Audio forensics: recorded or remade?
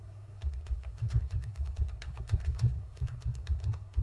remade